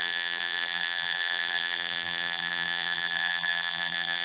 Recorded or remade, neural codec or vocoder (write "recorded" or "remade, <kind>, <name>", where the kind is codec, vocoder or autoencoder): remade, vocoder, BigVGAN v2